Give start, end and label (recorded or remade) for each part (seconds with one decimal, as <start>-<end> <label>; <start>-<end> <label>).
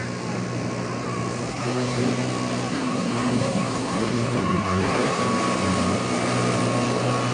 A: 0.0-1.5 recorded; 1.5-2.1 remade; 2.1-2.7 recorded; 2.7-5.2 remade; 5.2-7.3 recorded